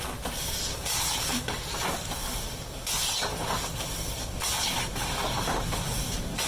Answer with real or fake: real